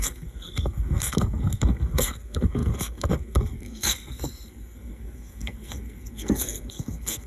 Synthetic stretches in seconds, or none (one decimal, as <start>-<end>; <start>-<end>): 0.0-7.3